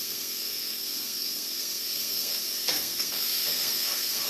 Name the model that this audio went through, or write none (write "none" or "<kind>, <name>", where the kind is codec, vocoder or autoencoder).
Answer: codec, SNAC